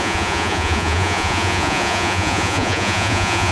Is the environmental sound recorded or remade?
remade